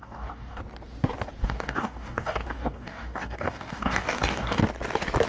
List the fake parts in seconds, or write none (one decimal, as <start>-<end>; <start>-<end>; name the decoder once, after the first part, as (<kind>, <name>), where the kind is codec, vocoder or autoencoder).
0.0-0.6 (codec, DAC); 1.4-4.6